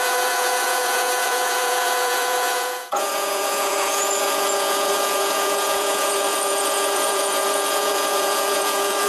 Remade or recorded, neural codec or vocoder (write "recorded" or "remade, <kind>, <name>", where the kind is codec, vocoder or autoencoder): remade, vocoder, Vocos